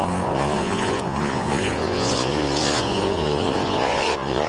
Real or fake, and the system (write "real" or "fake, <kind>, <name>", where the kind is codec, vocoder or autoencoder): fake, vocoder, Vocos